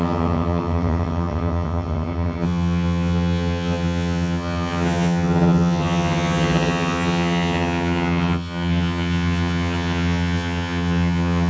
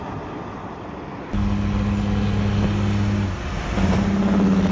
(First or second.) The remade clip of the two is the first